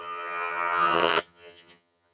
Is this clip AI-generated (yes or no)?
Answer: yes